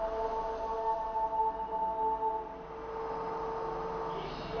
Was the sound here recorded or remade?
recorded